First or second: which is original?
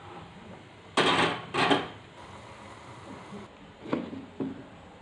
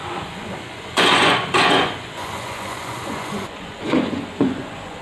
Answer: first